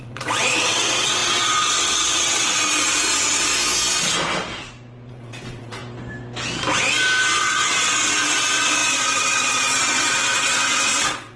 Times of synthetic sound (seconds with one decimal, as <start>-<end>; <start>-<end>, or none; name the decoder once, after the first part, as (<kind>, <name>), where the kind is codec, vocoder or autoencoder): 0.0-3.5 (vocoder, WaveNeXt); 5.1-5.8; 7.4-11.4